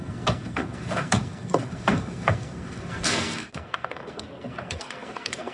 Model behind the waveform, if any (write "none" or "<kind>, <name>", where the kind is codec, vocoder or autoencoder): codec, SNAC